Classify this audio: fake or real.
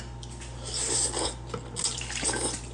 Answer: real